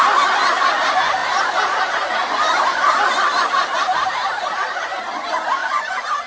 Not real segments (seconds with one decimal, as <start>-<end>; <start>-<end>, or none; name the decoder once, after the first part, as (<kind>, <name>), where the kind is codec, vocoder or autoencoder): 1.2-5.0 (vocoder, BigVGAN v2); 5.6-6.3